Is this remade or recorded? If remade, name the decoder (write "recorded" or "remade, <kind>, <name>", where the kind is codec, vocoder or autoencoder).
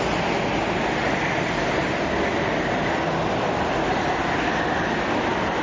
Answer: recorded